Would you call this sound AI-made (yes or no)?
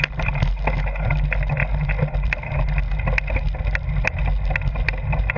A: no